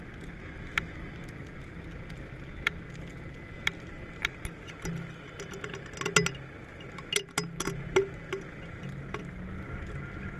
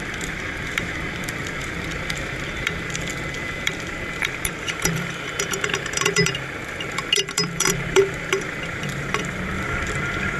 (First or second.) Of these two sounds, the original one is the first